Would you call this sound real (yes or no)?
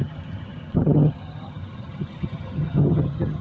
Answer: no